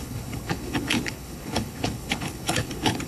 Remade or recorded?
remade